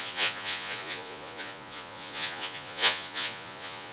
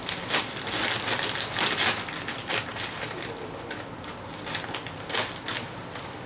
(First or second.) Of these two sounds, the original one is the second